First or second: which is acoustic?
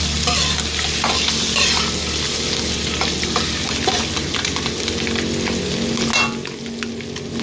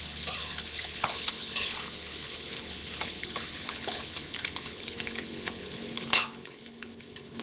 first